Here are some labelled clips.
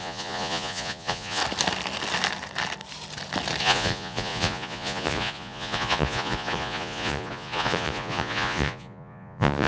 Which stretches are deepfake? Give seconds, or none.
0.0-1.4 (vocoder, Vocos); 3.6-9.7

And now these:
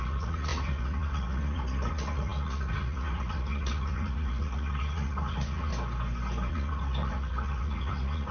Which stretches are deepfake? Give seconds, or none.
0.0-5.7 (vocoder, Vocos); 6.5-8.3

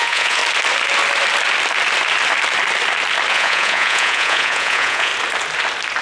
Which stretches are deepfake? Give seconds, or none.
0.0-0.4 (vocoder, Vocos); 3.3-5.1

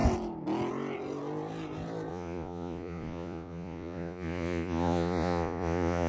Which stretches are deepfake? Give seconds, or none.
2.1-6.1 (vocoder, Vocos)

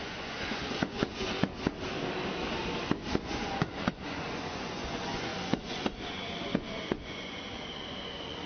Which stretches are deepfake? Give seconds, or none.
0.0-1.5 (vocoder, Vocos); 3.2-8.5